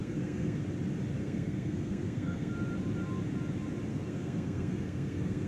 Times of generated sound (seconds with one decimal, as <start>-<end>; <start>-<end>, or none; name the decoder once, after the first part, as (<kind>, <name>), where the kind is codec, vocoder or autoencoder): 0.0-0.6 (codec, SNAC); 1.2-2.5; 3.9-5.5

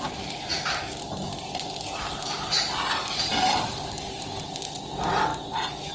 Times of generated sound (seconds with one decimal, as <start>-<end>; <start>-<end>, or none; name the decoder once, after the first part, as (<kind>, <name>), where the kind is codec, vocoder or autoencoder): none

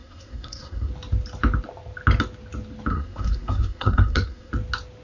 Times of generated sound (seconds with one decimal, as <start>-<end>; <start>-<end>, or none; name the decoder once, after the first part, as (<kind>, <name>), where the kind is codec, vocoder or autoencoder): 0.0-0.9 (codec, SNAC); 2.9-4.5

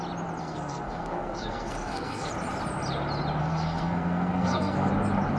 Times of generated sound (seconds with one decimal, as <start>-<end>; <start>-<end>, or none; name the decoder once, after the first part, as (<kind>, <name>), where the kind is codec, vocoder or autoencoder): 0.4-2.3 (codec, SNAC); 3.4-4.9

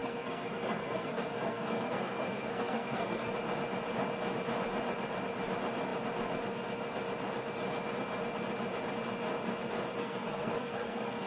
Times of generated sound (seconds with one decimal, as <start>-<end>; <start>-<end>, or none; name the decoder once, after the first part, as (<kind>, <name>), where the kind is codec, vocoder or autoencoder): 0.0-3.3 (codec, SNAC); 10.0-11.3

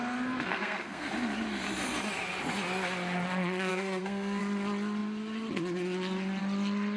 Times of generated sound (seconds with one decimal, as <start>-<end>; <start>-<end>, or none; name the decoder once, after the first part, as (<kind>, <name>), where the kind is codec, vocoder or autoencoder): 0.5-1.1 (codec, SNAC); 3.7-4.4

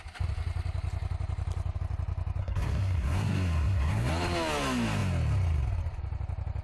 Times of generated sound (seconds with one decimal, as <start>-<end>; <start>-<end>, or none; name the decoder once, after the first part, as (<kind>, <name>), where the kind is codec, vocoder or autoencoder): 2.4-4.1 (codec, SNAC)

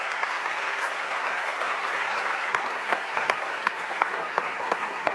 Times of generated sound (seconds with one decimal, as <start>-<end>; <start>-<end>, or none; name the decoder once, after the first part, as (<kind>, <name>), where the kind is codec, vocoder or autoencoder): 0.0-5.1 (codec, SNAC)